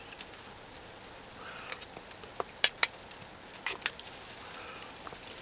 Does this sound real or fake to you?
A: real